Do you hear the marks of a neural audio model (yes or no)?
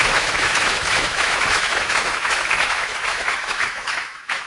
yes